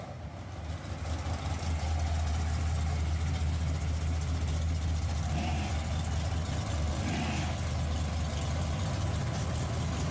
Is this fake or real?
real